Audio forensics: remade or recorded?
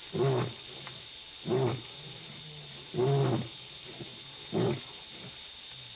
recorded